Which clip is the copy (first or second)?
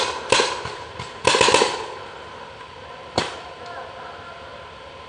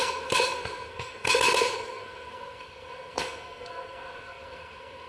second